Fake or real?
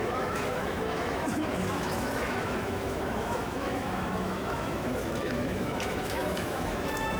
fake